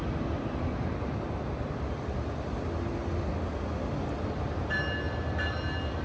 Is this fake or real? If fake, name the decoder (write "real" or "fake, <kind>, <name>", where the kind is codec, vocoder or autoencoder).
real